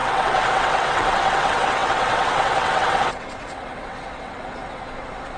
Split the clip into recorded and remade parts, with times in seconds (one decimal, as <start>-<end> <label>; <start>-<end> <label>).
0.0-5.4 remade